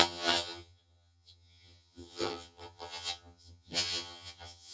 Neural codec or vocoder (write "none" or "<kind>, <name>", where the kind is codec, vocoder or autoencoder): vocoder, HiFi-GAN